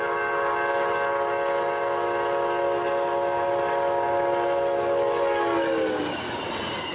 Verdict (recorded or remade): recorded